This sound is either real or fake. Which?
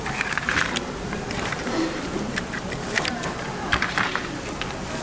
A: fake